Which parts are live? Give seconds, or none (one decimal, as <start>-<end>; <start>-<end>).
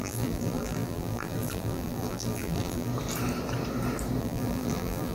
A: 2.9-4.2